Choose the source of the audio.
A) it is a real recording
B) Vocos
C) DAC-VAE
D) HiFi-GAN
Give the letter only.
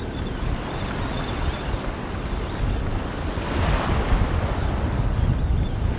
A